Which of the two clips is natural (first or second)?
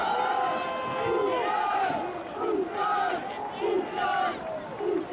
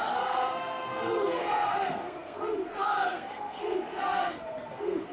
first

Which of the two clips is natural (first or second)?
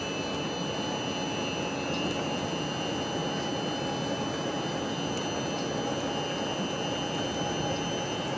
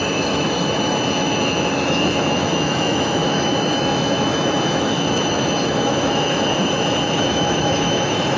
first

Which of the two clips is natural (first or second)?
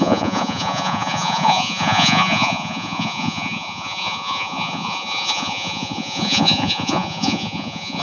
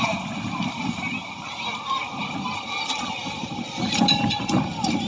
second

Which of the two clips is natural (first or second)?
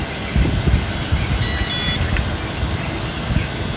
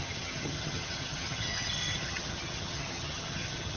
first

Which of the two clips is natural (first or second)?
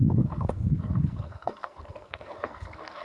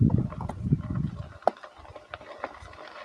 second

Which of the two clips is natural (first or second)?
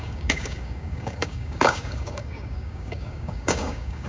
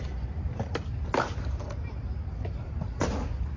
second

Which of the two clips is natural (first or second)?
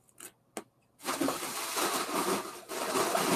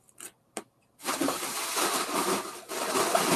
first